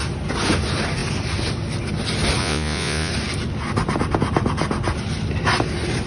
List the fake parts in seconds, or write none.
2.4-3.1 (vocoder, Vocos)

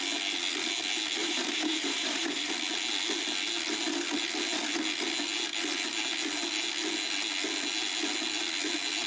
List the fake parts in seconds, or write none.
1.2-2.5 (vocoder, BigVGAN v2)

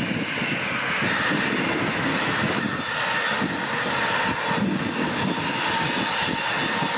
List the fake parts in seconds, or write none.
2.1-2.6 (autoencoder, DAC-VAE)

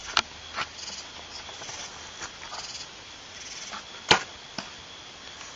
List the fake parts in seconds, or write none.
none

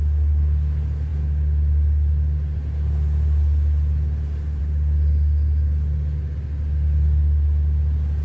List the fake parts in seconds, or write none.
none

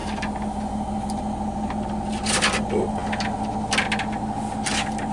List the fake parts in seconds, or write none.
none

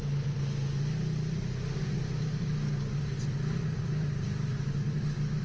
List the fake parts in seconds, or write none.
none